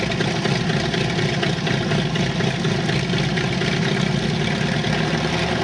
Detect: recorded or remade recorded